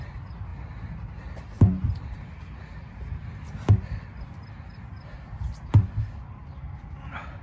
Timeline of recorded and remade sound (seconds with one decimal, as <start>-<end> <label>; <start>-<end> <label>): 0.0-7.4 recorded